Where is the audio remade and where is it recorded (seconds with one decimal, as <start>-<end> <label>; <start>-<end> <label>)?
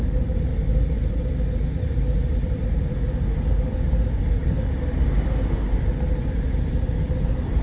0.0-7.6 recorded